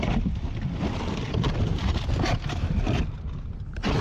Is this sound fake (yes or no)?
no